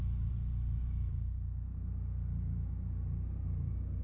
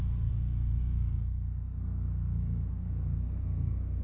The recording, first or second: first